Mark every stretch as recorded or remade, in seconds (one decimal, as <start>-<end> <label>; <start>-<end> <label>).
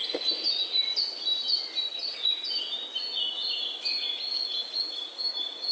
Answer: 0.0-1.9 recorded; 1.9-2.5 remade; 2.5-5.7 recorded